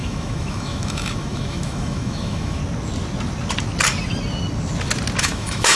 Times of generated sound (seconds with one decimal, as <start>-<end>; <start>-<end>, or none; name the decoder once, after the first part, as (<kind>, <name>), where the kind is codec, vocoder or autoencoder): 0.0-2.6 (autoencoder, DAC-VAE); 5.2-5.8